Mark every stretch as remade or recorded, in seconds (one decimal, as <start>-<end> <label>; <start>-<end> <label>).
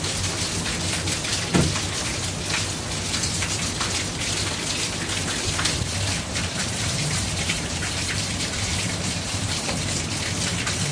0.0-6.3 recorded; 6.3-9.7 remade; 9.7-10.9 recorded